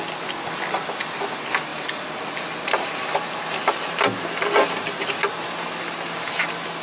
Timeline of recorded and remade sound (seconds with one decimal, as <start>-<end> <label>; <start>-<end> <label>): 0.0-1.7 recorded; 1.7-5.1 remade; 5.1-6.8 recorded